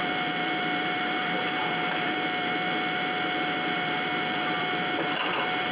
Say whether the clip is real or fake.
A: fake